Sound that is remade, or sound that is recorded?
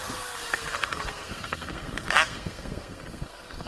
remade